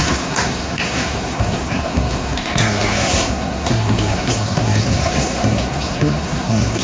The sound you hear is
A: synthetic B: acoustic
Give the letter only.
A